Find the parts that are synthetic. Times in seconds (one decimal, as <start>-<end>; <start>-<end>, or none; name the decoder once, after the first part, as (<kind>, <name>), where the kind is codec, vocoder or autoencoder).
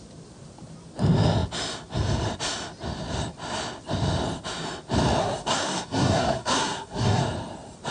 5.2-7.2 (codec, SNAC)